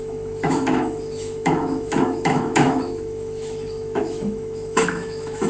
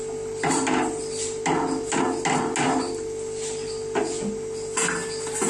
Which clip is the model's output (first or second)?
first